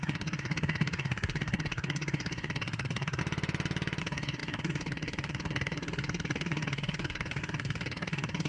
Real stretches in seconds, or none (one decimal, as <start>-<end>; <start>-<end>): 3.2-4.0